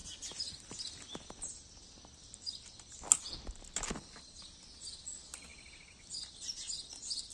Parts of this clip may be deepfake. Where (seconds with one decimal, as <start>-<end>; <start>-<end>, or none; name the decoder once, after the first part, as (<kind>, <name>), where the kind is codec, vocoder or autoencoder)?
none